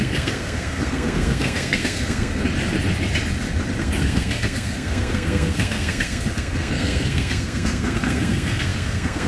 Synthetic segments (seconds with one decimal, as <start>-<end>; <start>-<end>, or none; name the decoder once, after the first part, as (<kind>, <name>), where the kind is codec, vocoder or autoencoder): 0.0-2.4 (codec, SNAC); 3.8-9.3